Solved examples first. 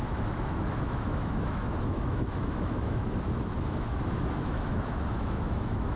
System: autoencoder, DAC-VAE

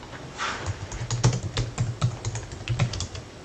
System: none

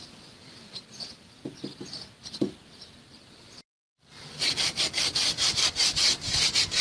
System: none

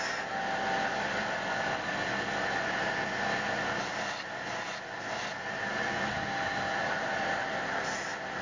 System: none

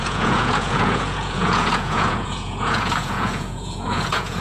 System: vocoder, Vocos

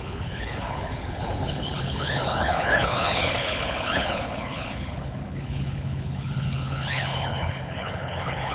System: codec, HILCodec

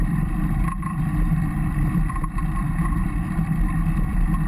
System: vocoder, BigVGAN v2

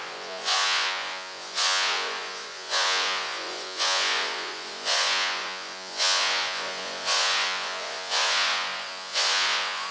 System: vocoder, Vocos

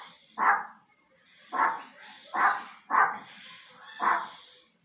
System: none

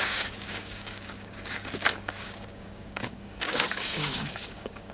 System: codec, DAC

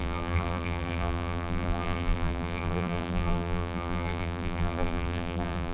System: vocoder, BigVGAN v2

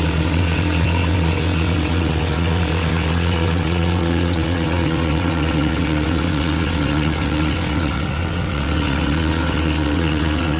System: vocoder, WaveNeXt